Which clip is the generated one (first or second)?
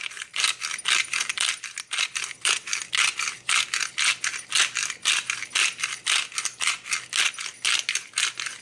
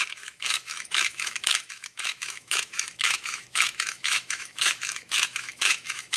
second